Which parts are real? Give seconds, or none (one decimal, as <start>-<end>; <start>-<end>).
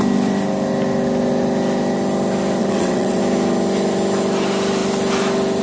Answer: 0.0-2.6; 3.2-5.6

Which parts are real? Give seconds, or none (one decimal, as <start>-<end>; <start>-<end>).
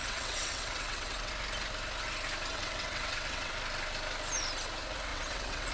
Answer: 1.3-2.5; 3.5-5.1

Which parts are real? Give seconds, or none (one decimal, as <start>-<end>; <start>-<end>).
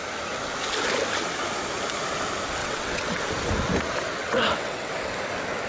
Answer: 0.0-2.6; 3.2-4.2; 4.9-5.7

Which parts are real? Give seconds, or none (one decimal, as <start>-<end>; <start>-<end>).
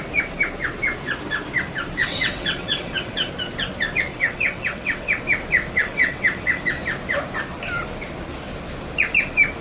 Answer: 0.0-2.0; 3.3-4.1; 5.2-5.8; 6.6-9.6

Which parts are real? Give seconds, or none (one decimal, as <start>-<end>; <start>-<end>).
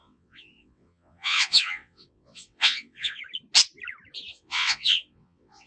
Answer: 3.2-4.3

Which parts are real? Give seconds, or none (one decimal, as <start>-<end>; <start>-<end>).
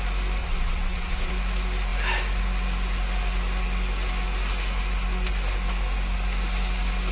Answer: 0.0-0.4; 1.3-7.1